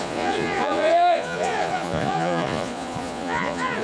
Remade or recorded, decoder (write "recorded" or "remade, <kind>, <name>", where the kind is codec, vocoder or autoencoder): remade, vocoder, Vocos